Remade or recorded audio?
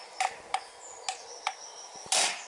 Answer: recorded